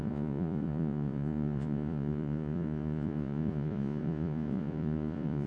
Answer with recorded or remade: remade